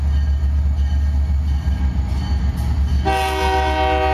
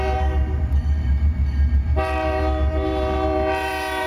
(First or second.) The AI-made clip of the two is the second